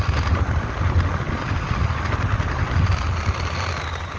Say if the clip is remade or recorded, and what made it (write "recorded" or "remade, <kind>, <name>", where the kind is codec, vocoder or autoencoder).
recorded